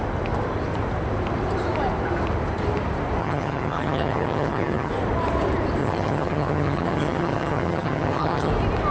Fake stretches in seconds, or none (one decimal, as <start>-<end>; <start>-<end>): 3.2-4.9; 5.8-8.5